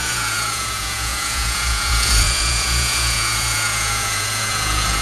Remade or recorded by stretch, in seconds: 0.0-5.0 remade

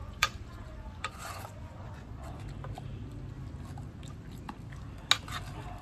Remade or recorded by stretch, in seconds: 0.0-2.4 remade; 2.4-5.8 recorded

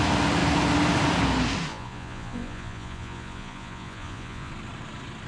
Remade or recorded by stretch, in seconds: 0.0-1.7 recorded; 1.7-4.5 remade; 4.5-5.3 recorded

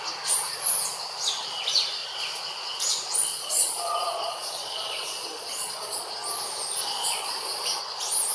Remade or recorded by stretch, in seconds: 0.0-3.3 recorded; 3.3-6.1 remade; 6.1-6.8 recorded; 6.8-7.8 remade; 7.8-8.3 recorded

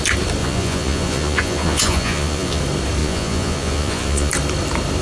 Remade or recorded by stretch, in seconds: 0.0-0.4 recorded; 0.4-2.6 remade; 2.6-3.0 recorded; 3.0-4.3 remade; 4.3-5.0 recorded

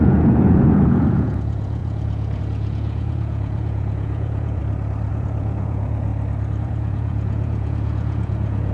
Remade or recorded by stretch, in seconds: 0.0-4.6 remade; 4.6-5.1 recorded; 5.1-6.1 remade; 6.1-6.6 recorded; 6.6-8.7 remade

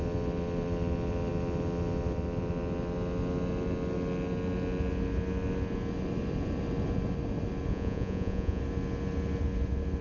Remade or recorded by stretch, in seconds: 0.0-7.7 recorded; 7.7-8.6 remade; 8.6-10.0 recorded